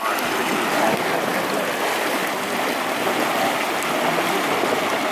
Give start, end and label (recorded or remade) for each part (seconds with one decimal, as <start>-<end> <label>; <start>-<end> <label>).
0.0-5.1 recorded